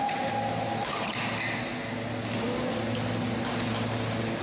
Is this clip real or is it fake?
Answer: real